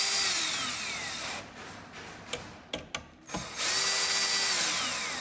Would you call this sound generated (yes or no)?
no